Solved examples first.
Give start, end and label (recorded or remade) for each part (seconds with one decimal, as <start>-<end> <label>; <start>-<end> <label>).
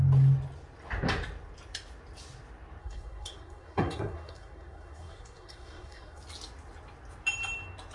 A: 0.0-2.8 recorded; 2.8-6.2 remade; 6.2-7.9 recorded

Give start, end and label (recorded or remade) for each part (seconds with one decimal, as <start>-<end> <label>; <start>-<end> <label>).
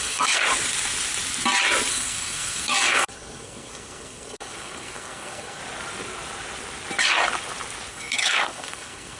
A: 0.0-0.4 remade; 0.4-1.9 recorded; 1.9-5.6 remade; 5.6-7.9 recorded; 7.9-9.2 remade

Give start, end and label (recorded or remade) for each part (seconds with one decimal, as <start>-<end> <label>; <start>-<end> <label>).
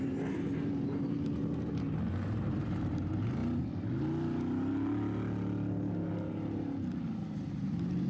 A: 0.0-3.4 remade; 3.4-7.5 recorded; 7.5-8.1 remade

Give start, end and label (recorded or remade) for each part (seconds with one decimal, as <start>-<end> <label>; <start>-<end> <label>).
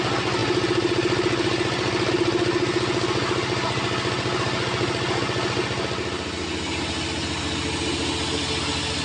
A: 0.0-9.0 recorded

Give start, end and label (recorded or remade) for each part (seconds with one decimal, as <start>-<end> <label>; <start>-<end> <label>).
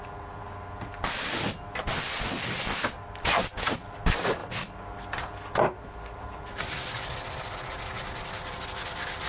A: 0.0-9.3 recorded